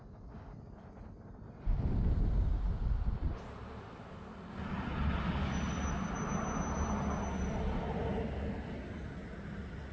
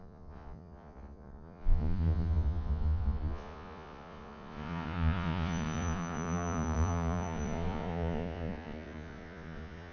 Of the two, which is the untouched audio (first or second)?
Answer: first